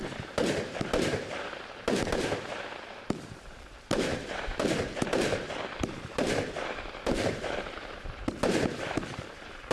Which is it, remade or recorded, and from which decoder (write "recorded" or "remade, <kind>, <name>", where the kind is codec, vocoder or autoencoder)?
remade, vocoder, BigVGAN v2